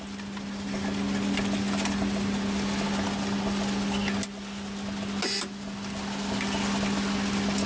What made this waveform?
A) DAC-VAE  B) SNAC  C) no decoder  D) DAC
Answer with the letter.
C